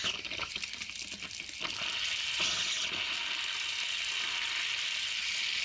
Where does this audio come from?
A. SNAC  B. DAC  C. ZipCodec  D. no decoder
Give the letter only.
D